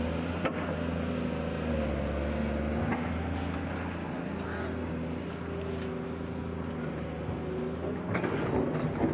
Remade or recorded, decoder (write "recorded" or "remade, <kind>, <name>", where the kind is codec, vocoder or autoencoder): recorded